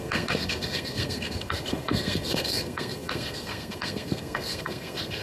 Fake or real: fake